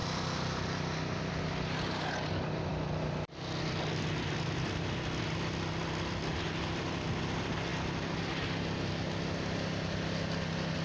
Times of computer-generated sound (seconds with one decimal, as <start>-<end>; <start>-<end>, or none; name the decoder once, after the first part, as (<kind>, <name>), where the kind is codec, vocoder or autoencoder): 0.0-1.3 (vocoder, BigVGAN v2)